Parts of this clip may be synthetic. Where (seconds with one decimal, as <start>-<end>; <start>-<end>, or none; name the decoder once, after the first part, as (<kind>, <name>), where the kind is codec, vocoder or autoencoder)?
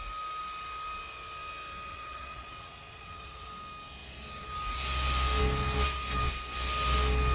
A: 1.9-3.5 (vocoder, WaveNeXt)